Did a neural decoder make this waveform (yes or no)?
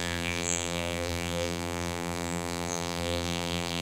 yes